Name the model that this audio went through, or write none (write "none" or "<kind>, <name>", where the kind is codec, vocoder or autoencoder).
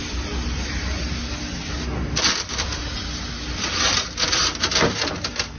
none